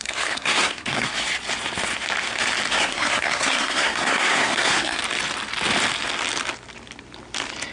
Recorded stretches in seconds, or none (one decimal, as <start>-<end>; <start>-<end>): 1.1-2.7; 5.0-7.7